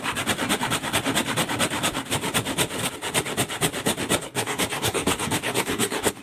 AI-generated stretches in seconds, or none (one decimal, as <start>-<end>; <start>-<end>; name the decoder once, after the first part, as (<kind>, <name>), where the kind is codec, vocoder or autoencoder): 4.2-6.2 (codec, DAC)

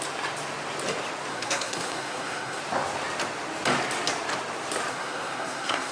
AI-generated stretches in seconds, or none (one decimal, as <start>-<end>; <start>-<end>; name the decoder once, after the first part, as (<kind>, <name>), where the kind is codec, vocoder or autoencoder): 1.3-2.6 (codec, SNAC); 4.9-5.9

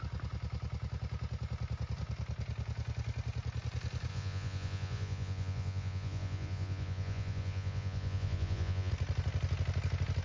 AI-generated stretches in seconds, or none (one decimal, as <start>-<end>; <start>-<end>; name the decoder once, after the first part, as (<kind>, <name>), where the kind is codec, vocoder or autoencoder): 4.1-8.9 (vocoder, Vocos)

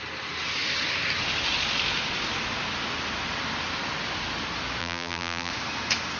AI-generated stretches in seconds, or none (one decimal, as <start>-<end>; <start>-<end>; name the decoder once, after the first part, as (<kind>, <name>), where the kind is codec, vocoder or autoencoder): 4.8-5.5 (vocoder, BigVGAN v2)

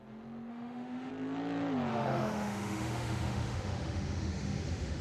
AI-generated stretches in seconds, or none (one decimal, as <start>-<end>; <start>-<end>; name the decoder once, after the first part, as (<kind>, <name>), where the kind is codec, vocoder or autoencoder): 0.5-1.1 (autoencoder, DAC-VAE); 1.9-5.0

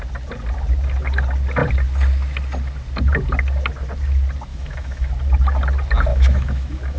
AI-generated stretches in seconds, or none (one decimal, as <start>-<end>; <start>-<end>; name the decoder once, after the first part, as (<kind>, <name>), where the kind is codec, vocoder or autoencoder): 4.5-5.1 (autoencoder, DAC-VAE); 6.1-7.0

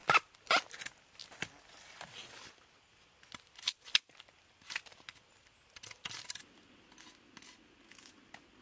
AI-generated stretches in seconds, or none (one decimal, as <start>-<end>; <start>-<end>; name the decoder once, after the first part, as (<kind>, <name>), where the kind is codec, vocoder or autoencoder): none

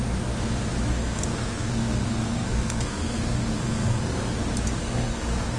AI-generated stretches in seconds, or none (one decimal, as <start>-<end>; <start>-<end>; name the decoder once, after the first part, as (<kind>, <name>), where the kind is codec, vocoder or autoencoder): 0.9-4.3 (codec, SNAC); 4.8-5.6